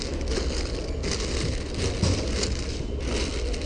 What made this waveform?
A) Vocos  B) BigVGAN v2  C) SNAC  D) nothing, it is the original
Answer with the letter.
D